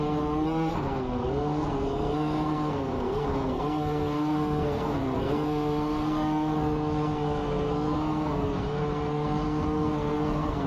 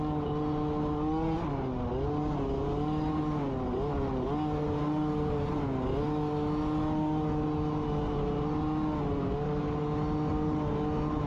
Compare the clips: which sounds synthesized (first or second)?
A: first